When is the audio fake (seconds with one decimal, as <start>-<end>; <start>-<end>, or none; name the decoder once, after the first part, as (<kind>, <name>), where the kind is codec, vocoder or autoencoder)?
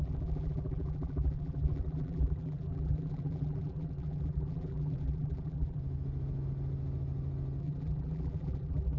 0.0-5.8 (vocoder, BigVGAN v2); 7.6-9.0